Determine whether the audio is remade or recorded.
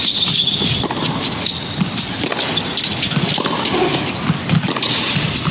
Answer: recorded